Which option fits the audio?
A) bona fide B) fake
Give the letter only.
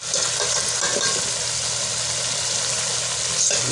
A